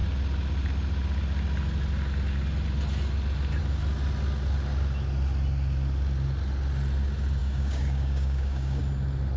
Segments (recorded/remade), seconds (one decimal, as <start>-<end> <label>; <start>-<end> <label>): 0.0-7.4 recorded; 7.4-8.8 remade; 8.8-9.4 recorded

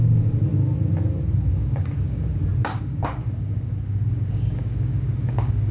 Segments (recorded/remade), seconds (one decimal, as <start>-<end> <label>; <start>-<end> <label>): 0.0-0.5 remade; 0.5-1.5 recorded; 1.5-2.3 remade; 2.3-2.8 recorded; 2.8-5.7 remade

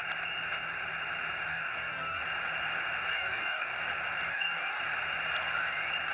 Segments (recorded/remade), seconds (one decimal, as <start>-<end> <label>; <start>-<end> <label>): 0.0-1.5 recorded; 1.5-2.2 remade; 2.2-3.1 recorded; 3.1-3.8 remade; 3.8-4.3 recorded; 4.3-4.8 remade; 4.8-6.1 recorded